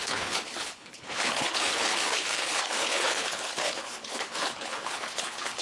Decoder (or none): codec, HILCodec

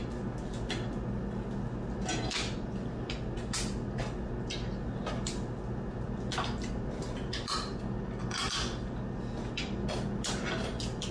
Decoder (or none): none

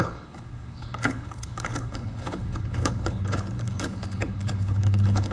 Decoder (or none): codec, HILCodec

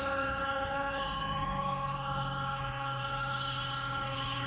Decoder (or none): codec, HILCodec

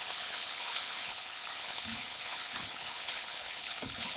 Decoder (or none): codec, HILCodec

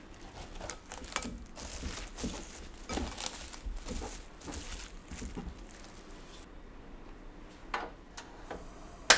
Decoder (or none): none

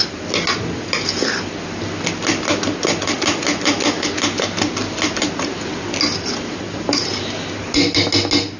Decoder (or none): none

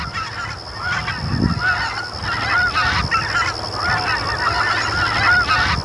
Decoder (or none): none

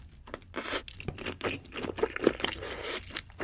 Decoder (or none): none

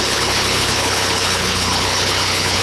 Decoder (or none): codec, HILCodec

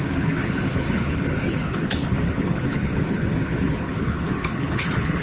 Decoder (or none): codec, HILCodec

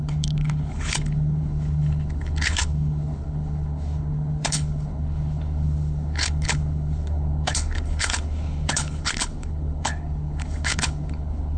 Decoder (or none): codec, HILCodec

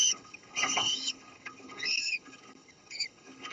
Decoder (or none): codec, HILCodec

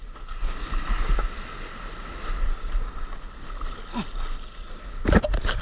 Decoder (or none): none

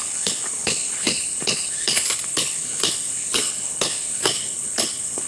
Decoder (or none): codec, HILCodec